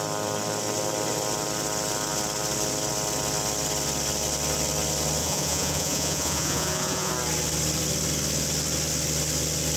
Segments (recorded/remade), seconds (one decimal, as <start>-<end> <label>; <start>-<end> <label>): 0.0-5.2 recorded; 5.2-7.1 remade; 7.1-9.8 recorded